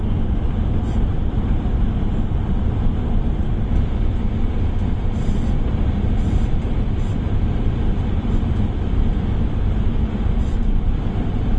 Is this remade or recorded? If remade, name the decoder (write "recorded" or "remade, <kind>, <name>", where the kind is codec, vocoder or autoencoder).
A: remade, vocoder, BigVGAN v2